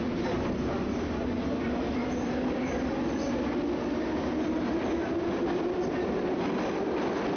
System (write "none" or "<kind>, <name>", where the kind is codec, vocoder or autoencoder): none